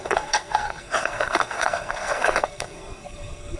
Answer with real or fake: fake